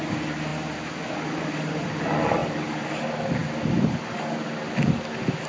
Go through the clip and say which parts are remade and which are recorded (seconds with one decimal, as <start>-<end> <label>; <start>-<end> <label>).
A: 0.0-2.4 recorded; 2.4-3.0 remade; 3.0-5.5 recorded